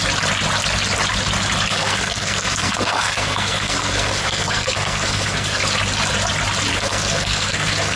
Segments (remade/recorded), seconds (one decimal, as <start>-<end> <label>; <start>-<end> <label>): 0.0-1.7 recorded; 1.7-5.6 remade; 5.6-6.7 recorded; 6.7-8.0 remade